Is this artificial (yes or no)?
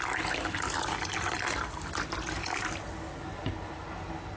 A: no